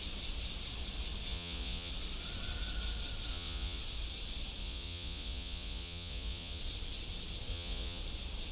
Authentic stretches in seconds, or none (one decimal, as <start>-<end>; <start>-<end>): 0.0-1.3; 1.9-3.3; 3.8-4.6; 6.6-7.5; 8.0-8.5